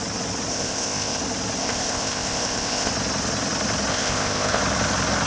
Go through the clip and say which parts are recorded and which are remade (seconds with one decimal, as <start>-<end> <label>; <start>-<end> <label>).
0.0-0.5 recorded; 0.5-1.2 remade; 1.2-1.6 recorded; 1.6-2.9 remade; 2.9-3.9 recorded; 3.9-4.6 remade; 4.6-5.3 recorded